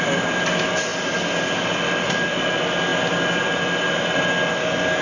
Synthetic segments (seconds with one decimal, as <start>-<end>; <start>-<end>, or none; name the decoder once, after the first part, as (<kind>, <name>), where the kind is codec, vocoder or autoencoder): none